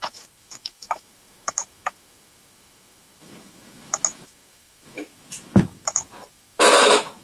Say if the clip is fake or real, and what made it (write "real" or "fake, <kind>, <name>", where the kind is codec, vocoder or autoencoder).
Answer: fake, autoencoder, DAC-VAE